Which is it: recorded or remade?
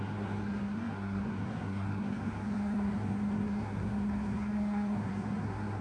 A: remade